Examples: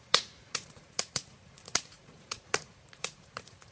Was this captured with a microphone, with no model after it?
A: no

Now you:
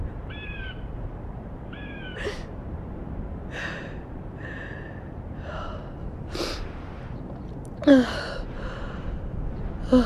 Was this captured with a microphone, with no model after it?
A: no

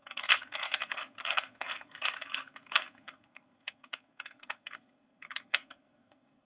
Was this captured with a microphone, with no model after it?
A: no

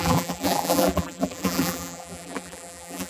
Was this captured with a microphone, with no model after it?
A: no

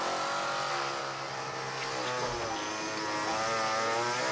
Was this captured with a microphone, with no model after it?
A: yes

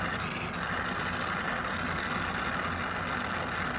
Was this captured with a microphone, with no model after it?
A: yes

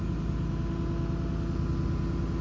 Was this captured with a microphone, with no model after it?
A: yes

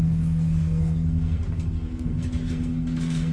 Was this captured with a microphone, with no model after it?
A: no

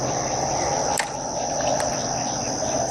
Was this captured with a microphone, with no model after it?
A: yes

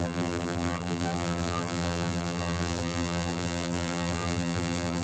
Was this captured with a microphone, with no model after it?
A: no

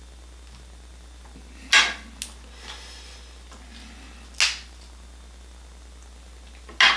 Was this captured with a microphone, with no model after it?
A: yes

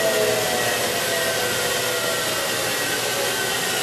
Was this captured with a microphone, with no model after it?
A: yes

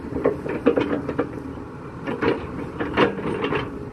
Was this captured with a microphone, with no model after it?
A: no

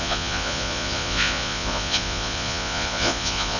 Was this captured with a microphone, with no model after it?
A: no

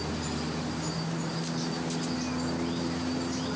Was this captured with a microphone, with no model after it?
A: yes